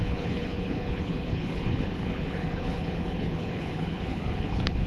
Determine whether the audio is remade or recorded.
remade